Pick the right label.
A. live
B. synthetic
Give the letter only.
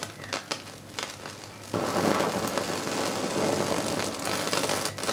A